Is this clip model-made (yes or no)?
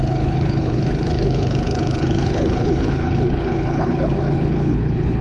yes